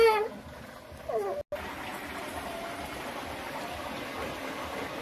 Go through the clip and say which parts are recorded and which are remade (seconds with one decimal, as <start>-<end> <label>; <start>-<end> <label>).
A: 0.0-5.0 recorded